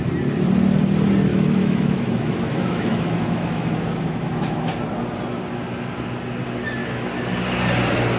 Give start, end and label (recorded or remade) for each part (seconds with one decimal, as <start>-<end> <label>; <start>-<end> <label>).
0.0-1.3 recorded; 1.3-4.7 remade; 4.7-6.8 recorded; 6.8-7.3 remade; 7.3-8.2 recorded